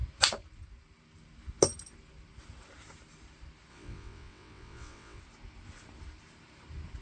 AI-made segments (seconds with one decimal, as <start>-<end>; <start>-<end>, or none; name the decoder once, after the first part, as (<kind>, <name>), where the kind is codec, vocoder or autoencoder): 3.7-5.2 (vocoder, WaveNeXt)